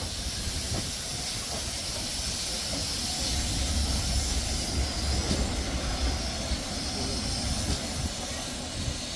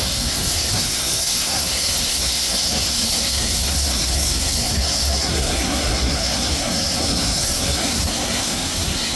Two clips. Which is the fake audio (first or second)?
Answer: second